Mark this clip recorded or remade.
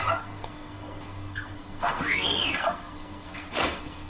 remade